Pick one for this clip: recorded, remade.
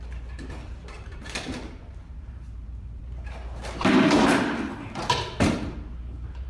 remade